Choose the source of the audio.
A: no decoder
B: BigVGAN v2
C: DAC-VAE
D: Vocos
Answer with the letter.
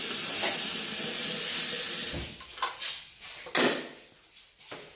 A